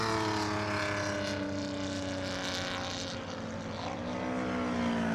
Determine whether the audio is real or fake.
real